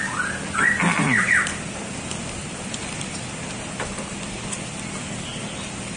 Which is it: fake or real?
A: real